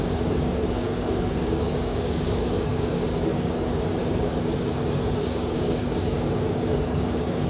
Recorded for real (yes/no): no